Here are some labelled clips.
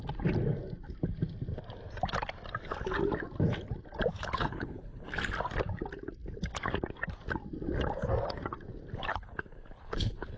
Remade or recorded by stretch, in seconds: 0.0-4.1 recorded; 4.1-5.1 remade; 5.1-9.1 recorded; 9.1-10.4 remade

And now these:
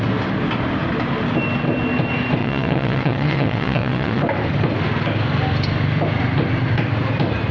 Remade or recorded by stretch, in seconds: 0.0-2.4 recorded; 2.4-4.2 remade; 4.2-7.5 recorded

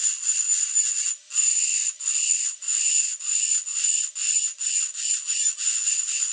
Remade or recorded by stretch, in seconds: 0.0-1.5 recorded; 1.5-3.2 remade; 3.2-6.3 recorded

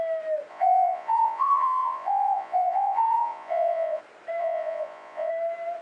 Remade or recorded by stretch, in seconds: 0.0-0.5 recorded; 0.5-4.0 remade; 4.0-4.4 recorded; 4.4-5.3 remade; 5.3-5.8 recorded

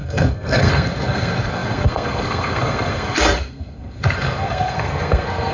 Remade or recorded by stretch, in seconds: 0.0-5.5 remade

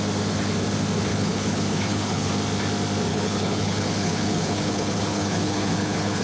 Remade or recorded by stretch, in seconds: 0.0-1.1 recorded; 1.1-2.3 remade; 2.3-3.1 recorded; 3.1-6.2 remade

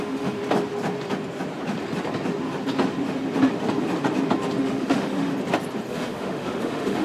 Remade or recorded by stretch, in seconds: 0.0-0.4 remade; 0.4-4.6 recorded; 4.6-5.3 remade; 5.3-5.9 recorded; 5.9-7.0 remade